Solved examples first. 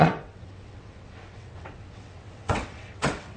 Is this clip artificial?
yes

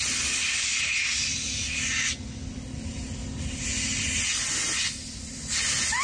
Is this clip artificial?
no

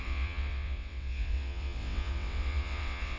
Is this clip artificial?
yes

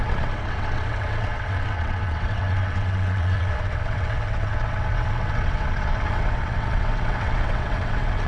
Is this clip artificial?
yes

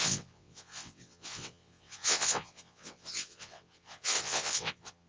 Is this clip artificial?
yes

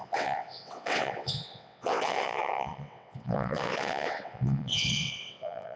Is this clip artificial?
yes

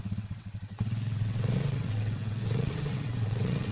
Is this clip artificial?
yes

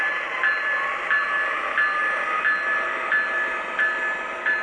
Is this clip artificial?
no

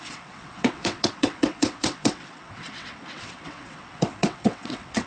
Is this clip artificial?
yes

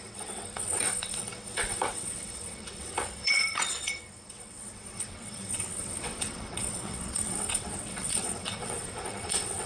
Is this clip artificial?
yes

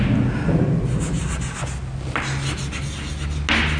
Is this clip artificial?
no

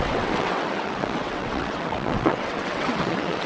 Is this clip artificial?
yes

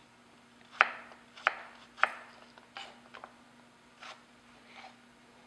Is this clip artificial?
no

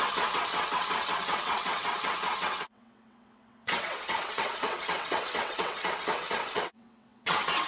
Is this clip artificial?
yes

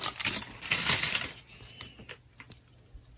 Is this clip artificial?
no